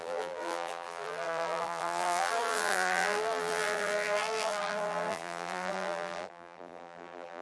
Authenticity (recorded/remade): remade